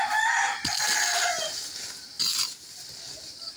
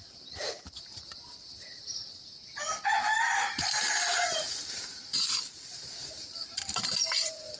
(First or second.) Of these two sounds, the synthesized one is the second